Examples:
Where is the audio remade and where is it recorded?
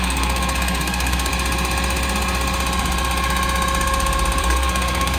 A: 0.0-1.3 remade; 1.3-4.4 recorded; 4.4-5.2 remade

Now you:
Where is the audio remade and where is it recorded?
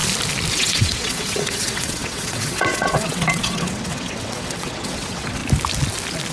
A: 0.0-0.5 recorded; 0.5-5.4 remade; 5.4-6.3 recorded